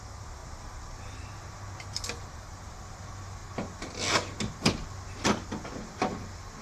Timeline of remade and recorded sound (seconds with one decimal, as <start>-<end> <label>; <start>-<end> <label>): 0.0-6.6 recorded